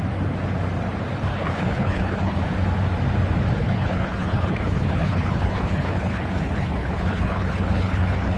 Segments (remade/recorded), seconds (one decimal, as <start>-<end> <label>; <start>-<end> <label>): 0.0-1.3 recorded; 1.3-2.4 remade; 2.4-3.6 recorded; 3.6-8.4 remade

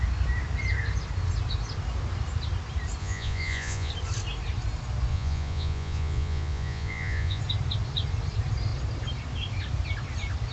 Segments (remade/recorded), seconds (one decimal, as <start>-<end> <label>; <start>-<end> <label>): 0.0-3.0 recorded; 3.0-3.9 remade; 3.9-5.1 recorded; 5.1-7.4 remade; 7.4-10.5 recorded

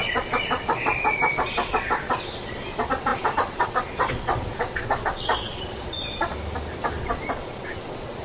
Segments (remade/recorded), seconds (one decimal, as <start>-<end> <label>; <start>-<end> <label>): 0.0-6.3 remade; 6.3-7.0 recorded; 7.0-8.2 remade

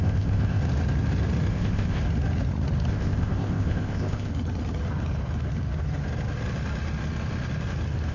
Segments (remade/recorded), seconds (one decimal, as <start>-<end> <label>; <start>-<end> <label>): 0.0-0.6 remade; 0.6-1.5 recorded; 1.5-2.0 remade; 2.0-2.9 recorded; 2.9-4.3 remade; 4.3-8.1 recorded

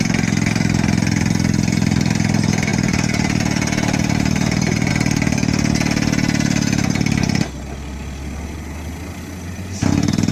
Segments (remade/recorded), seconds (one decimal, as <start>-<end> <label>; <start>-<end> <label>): 0.0-2.7 recorded; 2.7-4.9 remade; 4.9-10.3 recorded

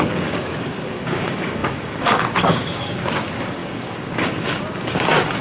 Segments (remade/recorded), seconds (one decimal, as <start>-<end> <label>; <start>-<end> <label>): 0.0-5.4 remade

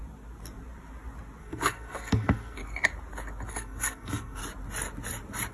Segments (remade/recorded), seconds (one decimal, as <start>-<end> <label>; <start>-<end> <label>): 0.0-1.4 recorded; 1.4-2.6 remade; 2.6-3.5 recorded; 3.5-4.4 remade; 4.4-5.5 recorded

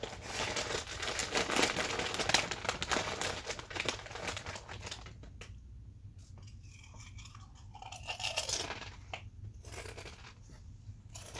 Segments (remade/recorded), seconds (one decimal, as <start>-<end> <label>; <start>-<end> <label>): 0.0-11.4 recorded